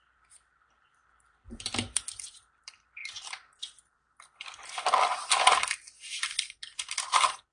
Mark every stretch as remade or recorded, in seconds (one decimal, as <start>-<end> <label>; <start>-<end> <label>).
0.0-3.0 remade; 3.0-6.8 recorded; 6.8-7.5 remade